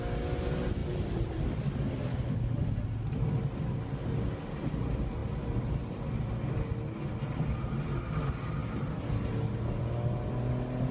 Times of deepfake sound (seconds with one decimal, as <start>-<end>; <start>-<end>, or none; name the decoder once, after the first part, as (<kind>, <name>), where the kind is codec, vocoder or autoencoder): 2.1-2.6 (codec, HILCodec)